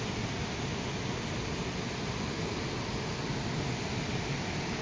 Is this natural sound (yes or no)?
yes